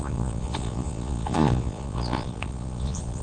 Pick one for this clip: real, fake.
fake